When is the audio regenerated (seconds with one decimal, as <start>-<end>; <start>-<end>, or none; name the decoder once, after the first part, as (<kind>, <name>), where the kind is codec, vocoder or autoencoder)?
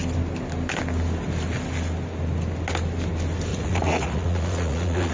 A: 3.5-5.1 (vocoder, Vocos)